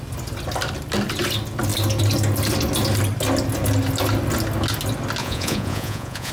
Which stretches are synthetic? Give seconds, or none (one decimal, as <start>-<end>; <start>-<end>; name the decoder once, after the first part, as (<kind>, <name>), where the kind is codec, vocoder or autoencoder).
5.2-6.3 (vocoder, Vocos)